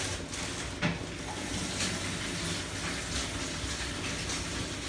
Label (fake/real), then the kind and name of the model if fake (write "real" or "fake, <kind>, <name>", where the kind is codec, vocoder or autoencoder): real